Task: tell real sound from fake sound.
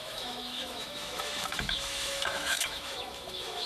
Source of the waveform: fake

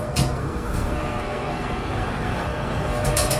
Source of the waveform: fake